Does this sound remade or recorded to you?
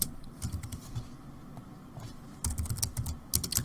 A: recorded